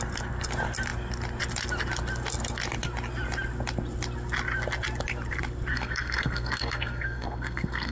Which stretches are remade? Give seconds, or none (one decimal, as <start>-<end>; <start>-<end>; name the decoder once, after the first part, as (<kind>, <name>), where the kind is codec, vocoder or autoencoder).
5.7-7.9 (codec, SNAC)